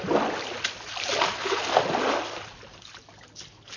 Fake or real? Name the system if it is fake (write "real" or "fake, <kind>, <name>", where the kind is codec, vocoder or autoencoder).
real